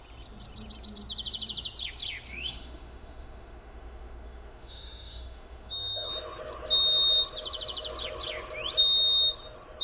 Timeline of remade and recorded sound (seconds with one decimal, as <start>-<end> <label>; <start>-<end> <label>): 0.0-2.3 recorded; 2.3-6.1 remade; 6.1-9.8 recorded